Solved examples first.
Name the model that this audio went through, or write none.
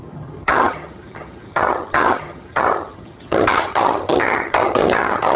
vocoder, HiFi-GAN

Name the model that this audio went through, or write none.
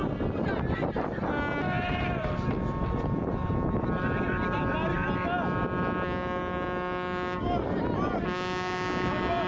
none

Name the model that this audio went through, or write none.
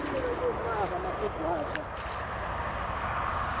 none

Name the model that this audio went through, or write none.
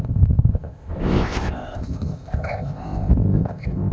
codec, ZipCodec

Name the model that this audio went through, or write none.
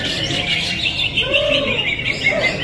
none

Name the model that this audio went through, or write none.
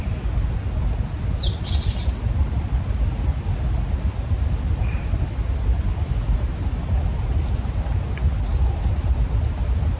none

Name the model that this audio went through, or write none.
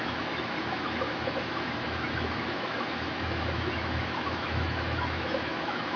autoencoder, DAC-VAE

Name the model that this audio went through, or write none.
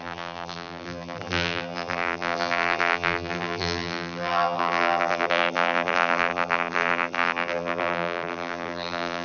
vocoder, BigVGAN v2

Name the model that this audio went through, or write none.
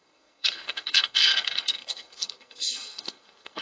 codec, SNAC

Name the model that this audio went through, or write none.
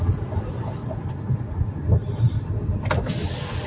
none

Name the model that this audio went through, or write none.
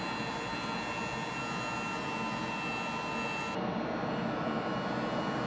none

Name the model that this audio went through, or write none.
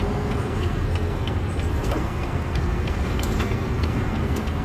codec, SNAC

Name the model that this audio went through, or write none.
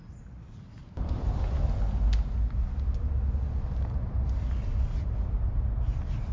none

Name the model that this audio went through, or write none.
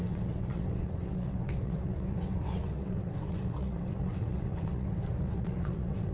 vocoder, WaveNeXt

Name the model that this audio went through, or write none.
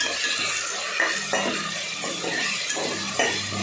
none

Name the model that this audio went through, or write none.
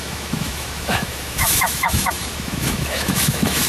autoencoder, DAC-VAE